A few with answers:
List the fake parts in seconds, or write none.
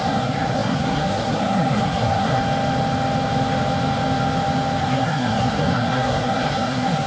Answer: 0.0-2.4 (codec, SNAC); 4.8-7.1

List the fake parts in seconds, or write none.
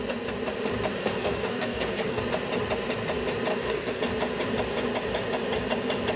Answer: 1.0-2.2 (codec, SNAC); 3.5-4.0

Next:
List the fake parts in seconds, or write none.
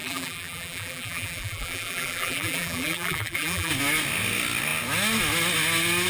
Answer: 0.0-3.7 (vocoder, BigVGAN v2)